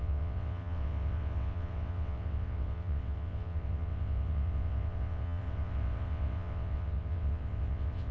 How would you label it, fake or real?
fake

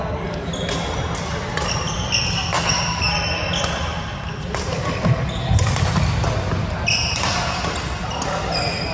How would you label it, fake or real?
real